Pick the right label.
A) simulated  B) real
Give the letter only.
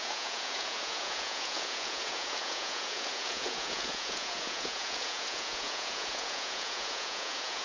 A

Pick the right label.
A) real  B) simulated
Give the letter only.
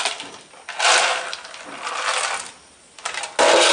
A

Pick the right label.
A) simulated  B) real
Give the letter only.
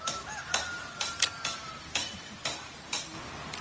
B